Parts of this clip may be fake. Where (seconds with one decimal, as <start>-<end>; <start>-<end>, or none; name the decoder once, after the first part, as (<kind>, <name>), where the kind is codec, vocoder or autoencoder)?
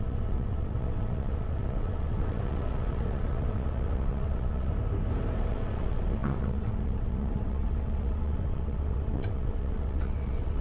0.0-4.7 (vocoder, WaveNeXt); 5.4-10.6